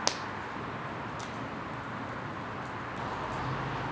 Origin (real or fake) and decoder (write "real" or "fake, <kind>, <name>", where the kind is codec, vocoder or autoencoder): real